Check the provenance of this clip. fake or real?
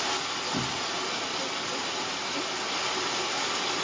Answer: real